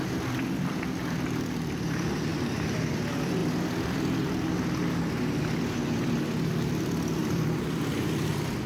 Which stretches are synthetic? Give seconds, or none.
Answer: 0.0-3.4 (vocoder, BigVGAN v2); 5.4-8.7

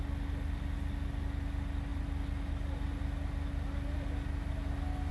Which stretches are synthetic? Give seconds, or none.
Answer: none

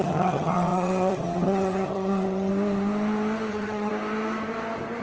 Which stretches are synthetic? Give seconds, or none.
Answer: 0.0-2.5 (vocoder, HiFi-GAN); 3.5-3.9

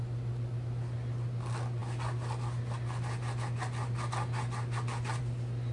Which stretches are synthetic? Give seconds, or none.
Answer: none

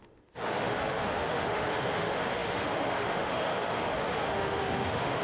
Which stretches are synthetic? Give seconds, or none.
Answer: 0.0-5.2 (autoencoder, DAC-VAE)